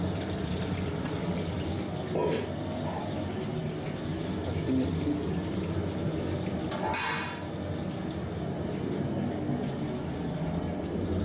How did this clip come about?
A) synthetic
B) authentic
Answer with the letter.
B